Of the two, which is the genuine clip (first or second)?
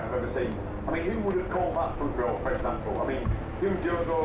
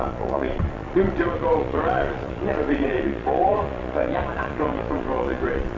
first